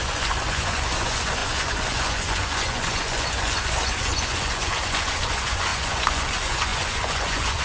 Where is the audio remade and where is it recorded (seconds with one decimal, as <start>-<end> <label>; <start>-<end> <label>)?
0.0-7.6 remade